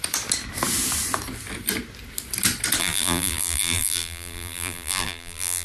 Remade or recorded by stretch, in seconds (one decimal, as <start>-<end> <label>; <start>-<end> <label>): 0.0-2.8 recorded; 2.8-5.6 remade